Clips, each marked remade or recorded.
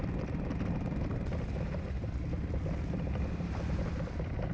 recorded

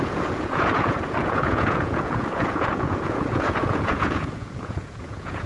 remade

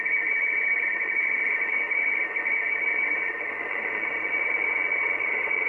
remade